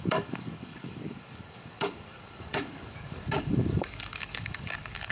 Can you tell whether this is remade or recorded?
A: remade